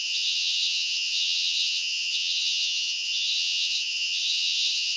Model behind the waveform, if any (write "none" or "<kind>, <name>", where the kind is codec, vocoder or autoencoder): vocoder, HiFi-GAN